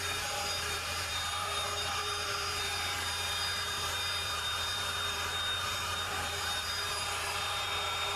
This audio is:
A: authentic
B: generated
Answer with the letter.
B